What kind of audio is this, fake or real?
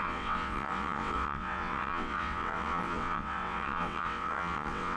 fake